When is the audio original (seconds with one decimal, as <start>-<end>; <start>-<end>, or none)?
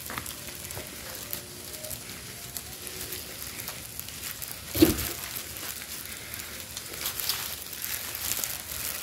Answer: 0.0-9.0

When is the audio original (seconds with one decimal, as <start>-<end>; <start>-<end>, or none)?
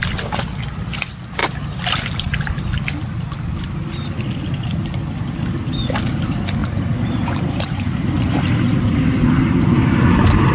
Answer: 0.0-6.6; 9.3-10.5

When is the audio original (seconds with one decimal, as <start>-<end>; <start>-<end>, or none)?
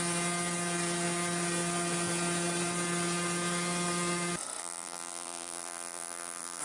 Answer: 0.0-4.6